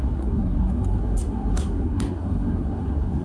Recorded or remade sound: remade